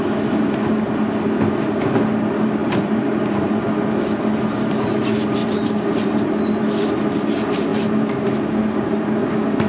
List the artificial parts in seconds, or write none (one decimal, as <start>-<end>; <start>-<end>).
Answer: 2.6-3.5; 5.4-6.2

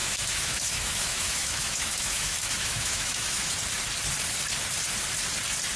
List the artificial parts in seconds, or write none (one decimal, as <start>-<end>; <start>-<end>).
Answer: 0.0-3.5

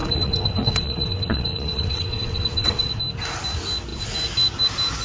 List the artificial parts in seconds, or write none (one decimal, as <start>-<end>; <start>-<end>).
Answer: 0.0-3.0

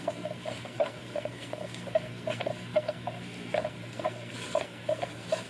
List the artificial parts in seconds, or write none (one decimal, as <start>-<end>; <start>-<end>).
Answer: 0.0-5.5